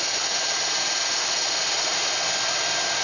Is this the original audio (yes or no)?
yes